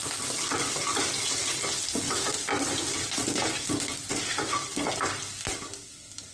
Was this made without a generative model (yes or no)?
yes